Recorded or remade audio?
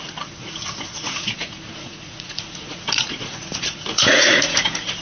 remade